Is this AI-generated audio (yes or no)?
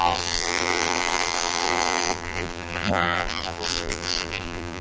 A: yes